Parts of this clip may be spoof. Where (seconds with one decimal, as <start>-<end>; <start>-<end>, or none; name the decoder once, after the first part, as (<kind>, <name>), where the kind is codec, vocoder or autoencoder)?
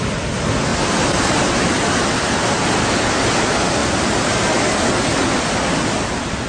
0.7-1.4 (vocoder, BigVGAN v2); 3.8-4.3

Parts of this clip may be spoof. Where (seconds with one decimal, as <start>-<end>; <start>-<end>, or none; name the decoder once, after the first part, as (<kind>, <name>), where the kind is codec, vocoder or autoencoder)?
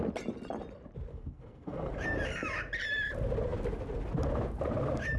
1.1-1.9 (codec, SNAC)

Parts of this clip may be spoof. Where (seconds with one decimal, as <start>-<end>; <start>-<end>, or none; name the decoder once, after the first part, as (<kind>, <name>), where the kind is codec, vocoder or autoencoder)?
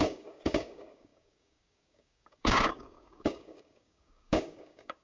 0.0-5.0 (codec, DAC)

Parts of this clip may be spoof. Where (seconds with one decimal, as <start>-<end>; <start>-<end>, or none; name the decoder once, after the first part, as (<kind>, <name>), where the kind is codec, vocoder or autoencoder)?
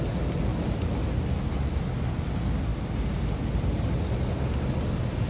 none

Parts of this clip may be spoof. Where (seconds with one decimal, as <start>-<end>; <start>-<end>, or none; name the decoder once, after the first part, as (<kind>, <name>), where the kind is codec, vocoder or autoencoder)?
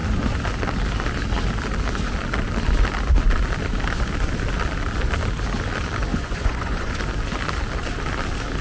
6.1-6.9 (vocoder, Vocos)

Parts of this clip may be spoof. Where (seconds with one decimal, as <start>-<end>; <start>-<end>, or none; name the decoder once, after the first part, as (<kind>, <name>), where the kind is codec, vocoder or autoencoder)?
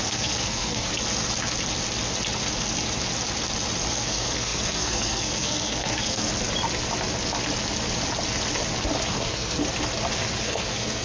0.0-0.9 (codec, SNAC); 3.9-6.3; 9.1-9.6; 10.4-11.0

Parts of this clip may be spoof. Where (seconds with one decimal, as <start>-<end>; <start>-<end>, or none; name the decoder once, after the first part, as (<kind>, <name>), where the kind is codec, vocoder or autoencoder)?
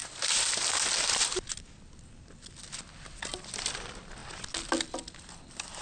none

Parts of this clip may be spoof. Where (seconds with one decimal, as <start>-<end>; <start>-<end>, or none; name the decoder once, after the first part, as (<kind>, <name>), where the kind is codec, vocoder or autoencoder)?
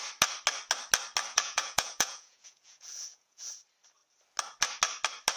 1.3-3.5 (vocoder, Vocos)